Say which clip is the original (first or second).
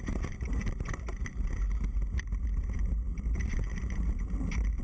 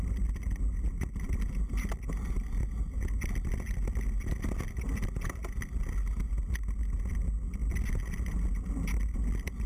second